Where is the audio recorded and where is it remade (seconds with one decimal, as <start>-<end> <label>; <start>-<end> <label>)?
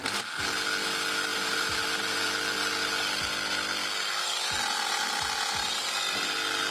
0.0-1.3 recorded; 1.3-2.3 remade; 2.3-6.7 recorded